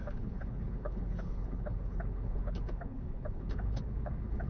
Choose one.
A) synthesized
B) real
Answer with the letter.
A